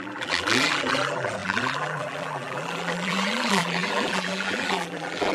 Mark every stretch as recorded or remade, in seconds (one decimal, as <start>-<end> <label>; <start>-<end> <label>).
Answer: 0.0-5.3 remade